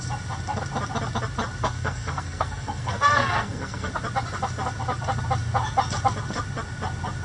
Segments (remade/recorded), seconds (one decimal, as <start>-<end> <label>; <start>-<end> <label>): 0.0-1.6 recorded; 1.6-3.9 remade; 3.9-7.2 recorded